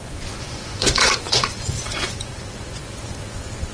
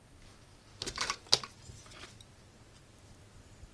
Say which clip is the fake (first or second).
first